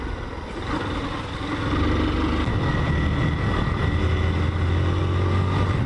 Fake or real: real